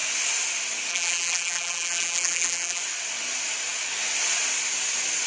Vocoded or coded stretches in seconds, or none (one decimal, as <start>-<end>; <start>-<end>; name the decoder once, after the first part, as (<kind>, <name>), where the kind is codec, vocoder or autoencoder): 0.9-2.8 (vocoder, BigVGAN v2)